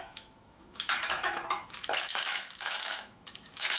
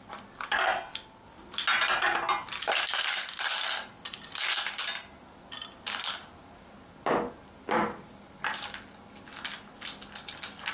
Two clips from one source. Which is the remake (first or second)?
first